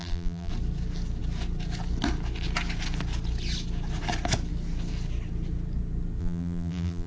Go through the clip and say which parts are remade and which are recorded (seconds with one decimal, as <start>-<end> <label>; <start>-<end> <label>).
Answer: 0.0-0.5 remade; 0.5-6.2 recorded; 6.2-7.1 remade